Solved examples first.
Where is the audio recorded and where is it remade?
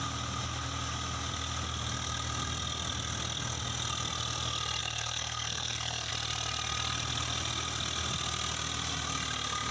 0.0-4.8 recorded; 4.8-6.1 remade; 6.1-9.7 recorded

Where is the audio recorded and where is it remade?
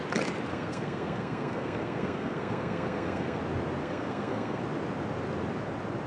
0.0-0.5 recorded; 0.5-3.4 remade; 3.4-3.8 recorded; 3.8-4.6 remade; 4.6-6.1 recorded